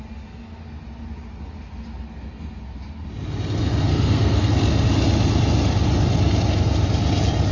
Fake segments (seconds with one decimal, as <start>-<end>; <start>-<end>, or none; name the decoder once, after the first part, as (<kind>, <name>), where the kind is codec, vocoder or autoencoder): 3.9-4.5 (codec, SNAC)